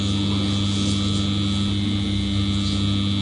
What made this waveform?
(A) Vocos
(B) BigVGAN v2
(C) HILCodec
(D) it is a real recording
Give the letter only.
D